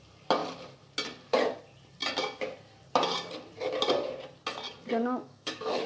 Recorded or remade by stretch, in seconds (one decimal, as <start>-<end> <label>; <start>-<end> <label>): 0.0-5.0 recorded; 5.0-5.9 remade